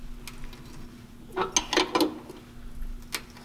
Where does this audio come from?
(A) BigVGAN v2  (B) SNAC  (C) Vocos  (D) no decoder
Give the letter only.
D